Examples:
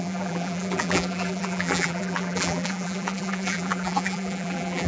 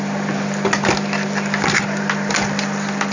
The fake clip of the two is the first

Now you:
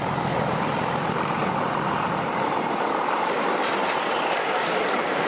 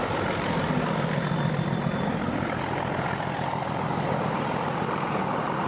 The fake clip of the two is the first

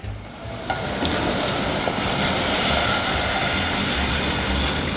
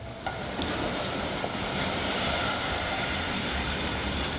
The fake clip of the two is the second